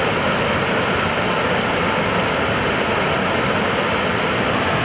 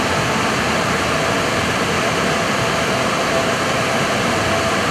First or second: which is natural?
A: first